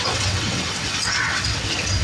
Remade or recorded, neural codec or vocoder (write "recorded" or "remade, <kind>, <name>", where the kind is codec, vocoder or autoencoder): remade, vocoder, WaveNeXt